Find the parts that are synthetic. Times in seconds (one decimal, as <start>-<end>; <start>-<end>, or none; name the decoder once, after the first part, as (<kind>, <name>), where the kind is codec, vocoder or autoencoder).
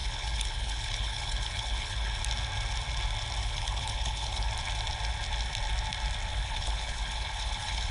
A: 0.0-2.2 (codec, HILCodec); 3.4-4.5; 6.3-7.9